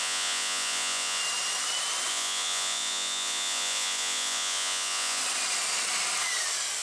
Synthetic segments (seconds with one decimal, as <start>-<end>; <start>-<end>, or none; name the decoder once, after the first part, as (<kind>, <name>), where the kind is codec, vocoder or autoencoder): 0.0-1.2 (vocoder, Vocos); 2.1-5.2